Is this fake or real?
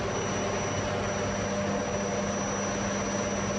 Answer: real